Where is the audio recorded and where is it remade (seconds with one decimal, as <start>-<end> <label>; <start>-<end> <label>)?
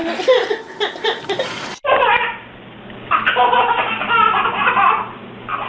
0.0-1.8 recorded; 1.8-5.2 remade; 5.2-5.7 recorded